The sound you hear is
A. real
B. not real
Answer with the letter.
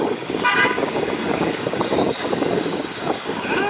B